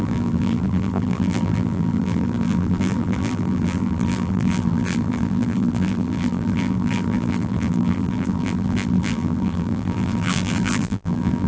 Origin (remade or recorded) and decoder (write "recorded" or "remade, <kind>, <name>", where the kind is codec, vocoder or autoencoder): remade, vocoder, BigVGAN v2